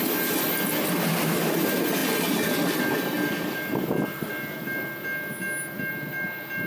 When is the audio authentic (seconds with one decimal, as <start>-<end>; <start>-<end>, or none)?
0.0-6.7